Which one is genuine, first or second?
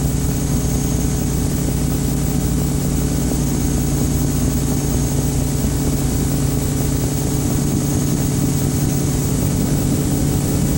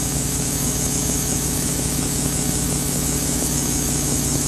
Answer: first